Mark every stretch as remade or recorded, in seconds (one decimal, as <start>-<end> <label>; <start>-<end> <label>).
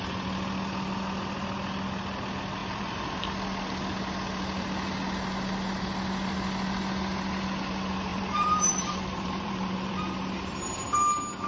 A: 0.0-2.6 recorded; 2.6-3.1 remade; 3.1-8.1 recorded; 8.1-10.0 remade; 10.0-11.5 recorded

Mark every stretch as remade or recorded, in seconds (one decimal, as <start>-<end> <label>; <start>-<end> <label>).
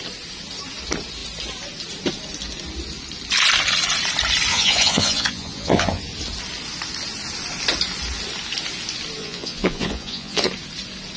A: 0.0-4.5 recorded; 4.5-6.0 remade; 6.0-9.2 recorded; 9.2-10.5 remade; 10.5-11.2 recorded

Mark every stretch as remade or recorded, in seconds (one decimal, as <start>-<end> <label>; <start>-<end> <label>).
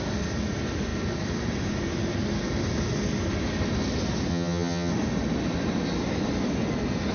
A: 0.0-4.3 recorded; 4.3-4.9 remade; 4.9-7.1 recorded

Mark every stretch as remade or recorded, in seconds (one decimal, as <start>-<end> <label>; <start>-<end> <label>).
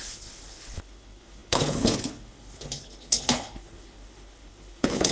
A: 0.0-5.1 remade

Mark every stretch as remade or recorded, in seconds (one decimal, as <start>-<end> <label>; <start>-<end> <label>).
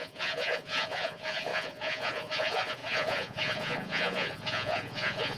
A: 0.0-5.4 remade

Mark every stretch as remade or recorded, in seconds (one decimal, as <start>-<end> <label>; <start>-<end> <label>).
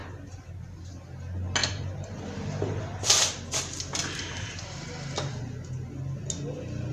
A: 0.0-0.9 remade; 0.9-1.6 recorded; 1.6-5.4 remade; 5.4-6.9 recorded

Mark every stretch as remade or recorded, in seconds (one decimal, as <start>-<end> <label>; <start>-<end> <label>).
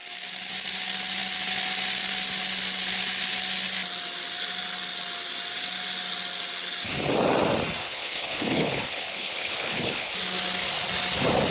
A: 0.0-7.8 recorded; 7.8-10.1 remade; 10.1-11.5 recorded